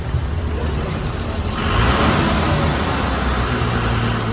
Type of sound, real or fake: real